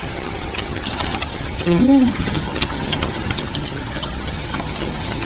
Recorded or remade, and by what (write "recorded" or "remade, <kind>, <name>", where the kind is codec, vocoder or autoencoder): remade, vocoder, HiFi-GAN